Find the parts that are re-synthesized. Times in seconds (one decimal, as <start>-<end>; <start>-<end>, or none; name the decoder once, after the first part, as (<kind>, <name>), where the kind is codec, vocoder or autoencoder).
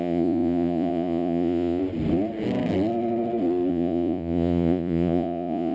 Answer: 0.0-1.8 (vocoder, Vocos); 3.7-5.7